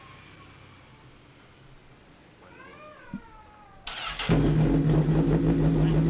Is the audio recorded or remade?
recorded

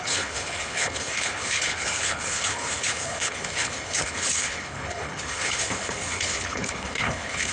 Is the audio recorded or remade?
remade